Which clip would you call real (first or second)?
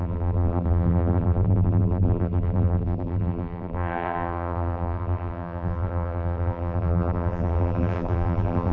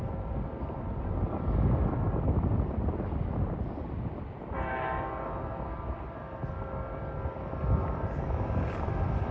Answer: second